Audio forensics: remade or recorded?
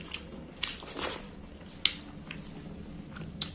recorded